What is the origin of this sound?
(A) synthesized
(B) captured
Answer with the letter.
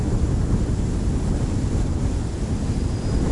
B